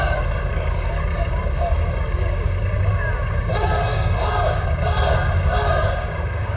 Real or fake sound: fake